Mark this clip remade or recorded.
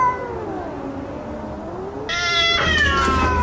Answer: recorded